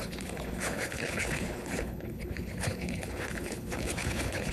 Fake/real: fake